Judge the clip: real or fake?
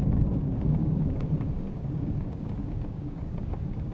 fake